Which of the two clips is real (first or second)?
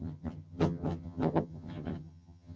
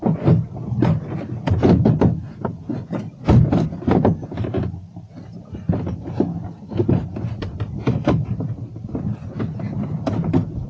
second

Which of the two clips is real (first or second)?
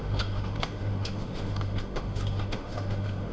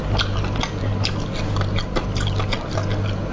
second